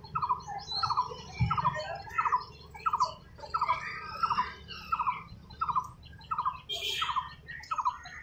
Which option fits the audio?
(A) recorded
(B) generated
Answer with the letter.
A